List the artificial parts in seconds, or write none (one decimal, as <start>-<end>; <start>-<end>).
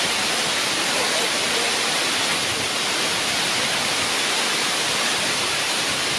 0.0-1.4; 5.1-6.2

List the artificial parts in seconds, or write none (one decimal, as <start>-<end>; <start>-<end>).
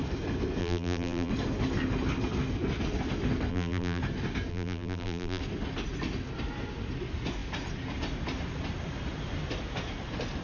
0.6-1.3; 3.5-4.0; 4.5-5.4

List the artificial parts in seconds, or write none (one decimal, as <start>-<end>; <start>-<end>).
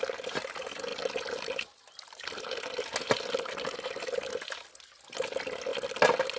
5.7-6.4